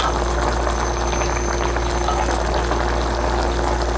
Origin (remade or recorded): recorded